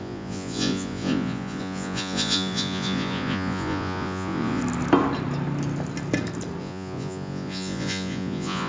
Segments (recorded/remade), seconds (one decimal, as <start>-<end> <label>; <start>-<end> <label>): 0.0-4.6 remade; 4.6-6.6 recorded; 6.6-8.7 remade